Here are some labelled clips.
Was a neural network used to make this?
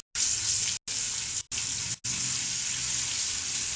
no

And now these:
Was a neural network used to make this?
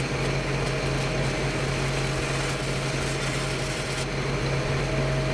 no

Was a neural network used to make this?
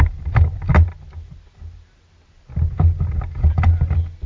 no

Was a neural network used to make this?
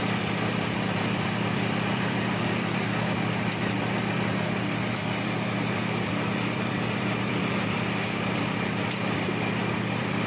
yes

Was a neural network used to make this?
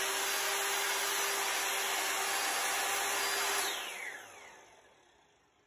no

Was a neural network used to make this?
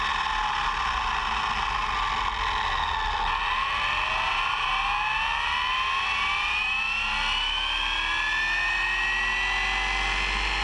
no